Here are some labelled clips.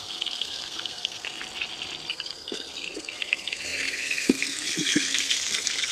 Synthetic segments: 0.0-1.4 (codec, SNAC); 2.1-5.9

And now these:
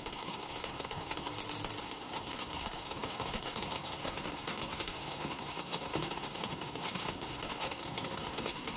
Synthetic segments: 0.0-1.3 (codec, SNAC); 1.8-8.8

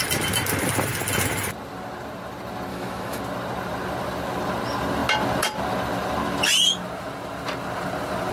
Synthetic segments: 2.7-3.2 (autoencoder, DAC-VAE)

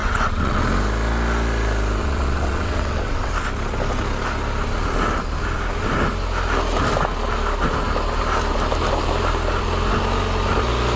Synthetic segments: 0.0-0.6 (vocoder, WaveNeXt); 2.0-3.3

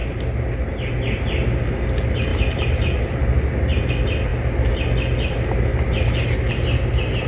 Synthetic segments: 2.3-3.9 (vocoder, BigVGAN v2)

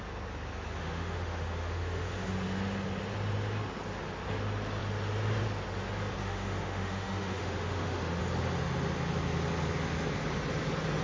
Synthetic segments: 0.8-2.3 (autoencoder, DAC-VAE); 6.2-8.2